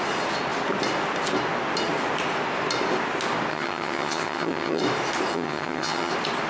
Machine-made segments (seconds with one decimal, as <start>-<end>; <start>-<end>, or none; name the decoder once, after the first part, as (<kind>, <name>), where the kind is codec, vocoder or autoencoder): 3.5-4.8 (vocoder, HiFi-GAN); 5.3-6.1